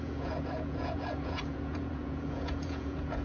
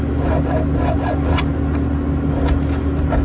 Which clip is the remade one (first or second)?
first